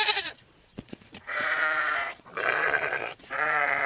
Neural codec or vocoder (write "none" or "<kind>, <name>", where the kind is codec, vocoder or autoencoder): vocoder, Vocos